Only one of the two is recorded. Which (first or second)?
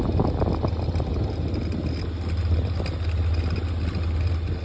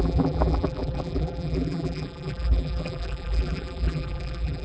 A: first